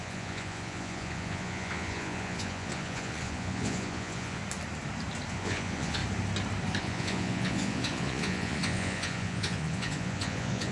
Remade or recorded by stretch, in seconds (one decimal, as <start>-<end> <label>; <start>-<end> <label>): 0.0-4.4 remade; 4.4-5.3 recorded; 5.3-6.0 remade; 6.0-6.8 recorded; 6.8-10.7 remade